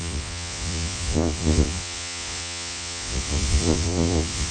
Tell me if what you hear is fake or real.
fake